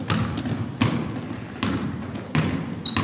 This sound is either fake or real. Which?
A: real